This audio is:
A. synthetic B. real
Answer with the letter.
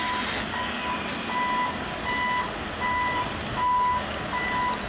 B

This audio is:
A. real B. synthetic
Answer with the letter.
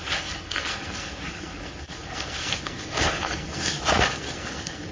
B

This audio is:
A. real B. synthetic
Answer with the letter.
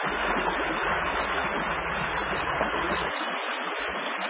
A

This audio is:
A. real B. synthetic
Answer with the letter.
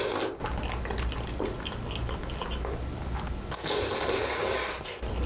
A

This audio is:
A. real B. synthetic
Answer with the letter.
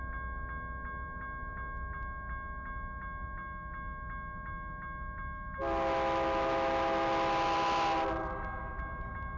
A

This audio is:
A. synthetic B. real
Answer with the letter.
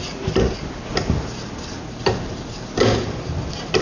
B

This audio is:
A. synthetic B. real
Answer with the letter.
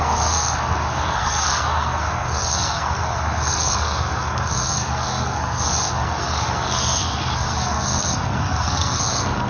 A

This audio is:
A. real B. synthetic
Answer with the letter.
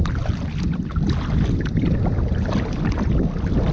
A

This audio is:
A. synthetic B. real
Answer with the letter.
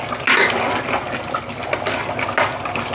B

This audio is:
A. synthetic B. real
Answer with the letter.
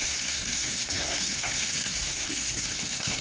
A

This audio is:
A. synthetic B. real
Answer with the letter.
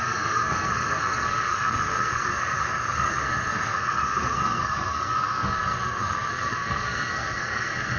A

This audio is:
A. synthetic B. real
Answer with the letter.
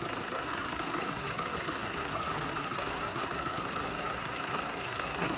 A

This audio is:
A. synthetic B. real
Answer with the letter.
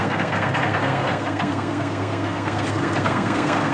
A